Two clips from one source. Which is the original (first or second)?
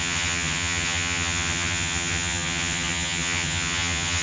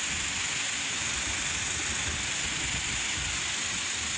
second